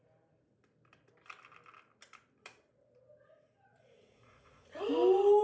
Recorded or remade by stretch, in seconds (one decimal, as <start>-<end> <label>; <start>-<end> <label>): 0.0-3.7 recorded; 3.7-4.9 remade; 4.9-5.4 recorded